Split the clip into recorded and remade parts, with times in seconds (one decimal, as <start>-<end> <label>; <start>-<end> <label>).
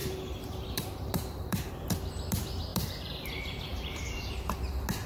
0.0-1.7 remade; 1.7-2.7 recorded; 2.7-3.2 remade; 3.2-3.7 recorded; 3.7-4.3 remade; 4.3-5.1 recorded